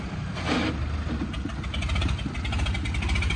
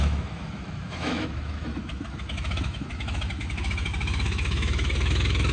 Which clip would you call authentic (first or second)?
first